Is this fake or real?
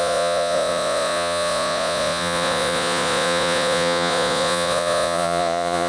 fake